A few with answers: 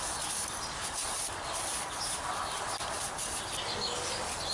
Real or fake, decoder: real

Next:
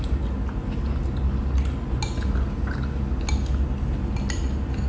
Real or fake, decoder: real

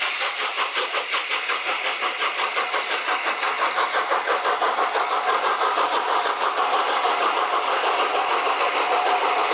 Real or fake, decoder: real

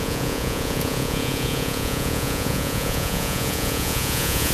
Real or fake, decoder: fake, vocoder, Vocos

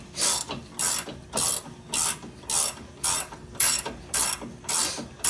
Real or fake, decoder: real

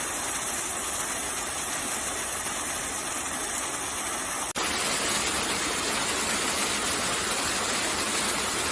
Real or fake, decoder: real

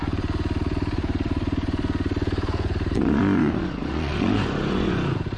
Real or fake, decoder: fake, vocoder, Vocos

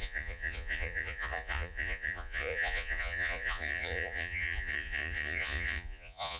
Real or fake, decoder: fake, vocoder, Vocos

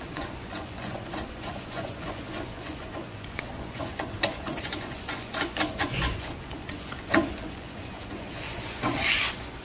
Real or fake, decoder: fake, vocoder, Vocos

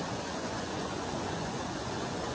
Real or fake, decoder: fake, vocoder, Vocos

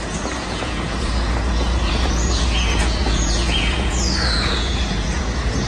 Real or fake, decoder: fake, vocoder, Vocos